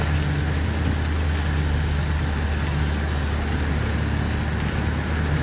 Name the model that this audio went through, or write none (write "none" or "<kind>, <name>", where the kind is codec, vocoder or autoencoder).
none